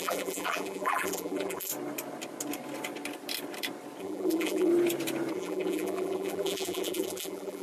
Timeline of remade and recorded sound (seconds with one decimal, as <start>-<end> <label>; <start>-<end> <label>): 0.0-1.7 remade; 1.7-4.0 recorded; 4.0-4.7 remade; 4.7-5.3 recorded; 5.3-7.6 remade

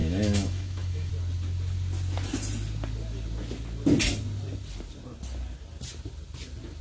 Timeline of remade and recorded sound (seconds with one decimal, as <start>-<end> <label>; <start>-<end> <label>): 0.0-1.1 remade; 1.1-6.8 recorded

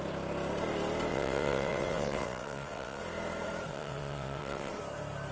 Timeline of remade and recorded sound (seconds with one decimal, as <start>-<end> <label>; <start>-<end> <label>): 0.0-1.1 recorded; 1.1-3.0 remade; 3.0-3.7 recorded; 3.7-4.7 remade; 4.7-5.3 recorded